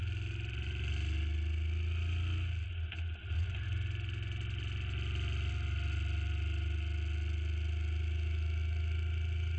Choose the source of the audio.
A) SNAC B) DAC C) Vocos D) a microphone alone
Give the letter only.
D